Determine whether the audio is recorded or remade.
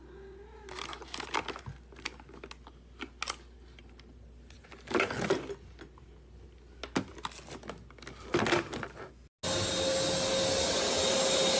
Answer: recorded